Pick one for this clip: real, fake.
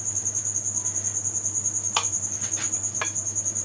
real